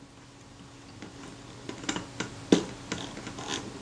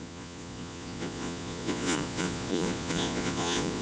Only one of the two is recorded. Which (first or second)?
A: first